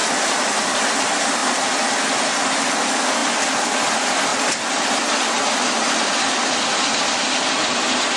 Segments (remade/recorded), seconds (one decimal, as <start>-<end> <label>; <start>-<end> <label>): 0.0-8.2 recorded